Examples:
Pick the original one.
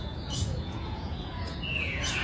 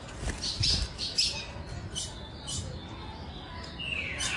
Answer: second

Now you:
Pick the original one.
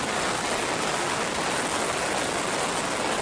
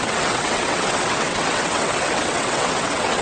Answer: first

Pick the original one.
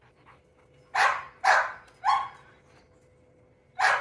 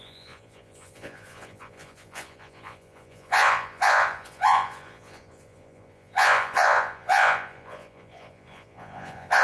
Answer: first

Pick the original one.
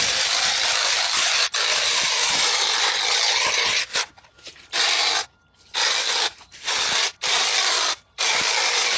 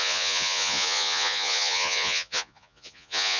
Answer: first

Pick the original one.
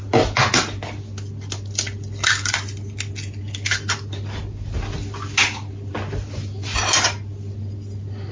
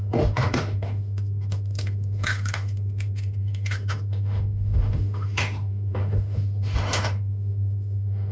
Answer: first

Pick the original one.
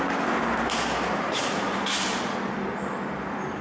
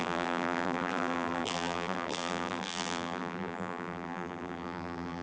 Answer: first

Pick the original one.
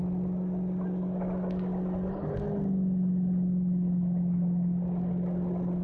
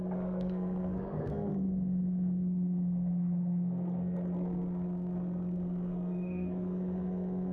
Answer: first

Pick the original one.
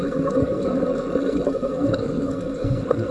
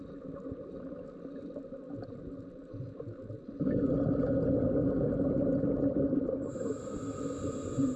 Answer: second